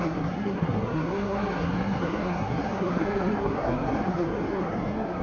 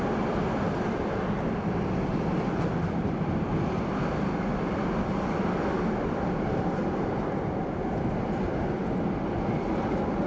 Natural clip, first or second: second